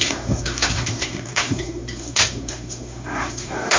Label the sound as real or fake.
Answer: fake